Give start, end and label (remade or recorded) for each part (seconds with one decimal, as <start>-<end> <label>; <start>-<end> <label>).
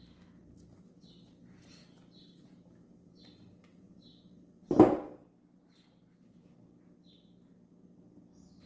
0.0-8.7 recorded